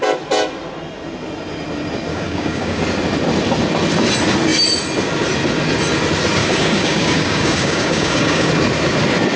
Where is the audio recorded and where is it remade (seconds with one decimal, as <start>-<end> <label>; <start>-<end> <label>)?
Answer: 0.0-2.1 recorded; 2.1-2.8 remade; 2.8-6.4 recorded; 6.4-8.5 remade; 8.5-9.4 recorded